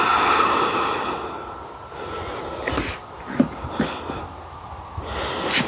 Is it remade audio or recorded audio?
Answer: recorded